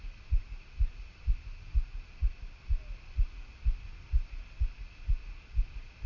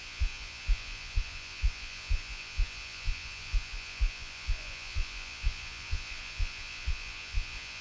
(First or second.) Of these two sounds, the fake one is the second